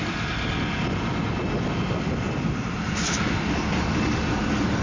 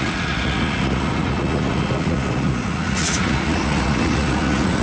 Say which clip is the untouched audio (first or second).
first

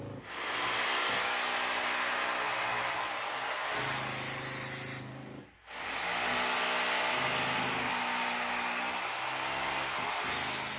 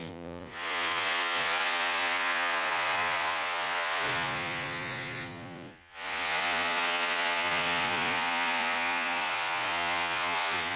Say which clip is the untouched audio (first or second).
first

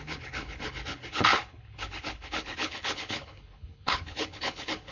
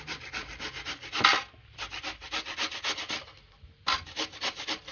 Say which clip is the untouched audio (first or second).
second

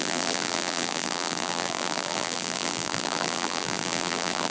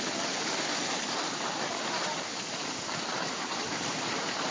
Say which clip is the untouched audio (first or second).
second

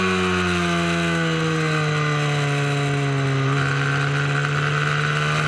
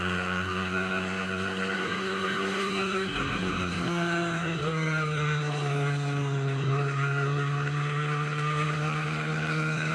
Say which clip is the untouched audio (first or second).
first